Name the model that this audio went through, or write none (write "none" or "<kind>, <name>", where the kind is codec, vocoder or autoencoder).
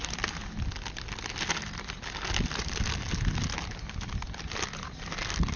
none